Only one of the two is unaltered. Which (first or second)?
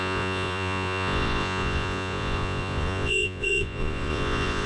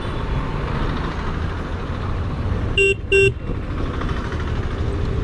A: second